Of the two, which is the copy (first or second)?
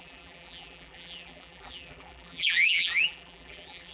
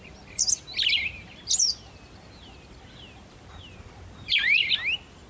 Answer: first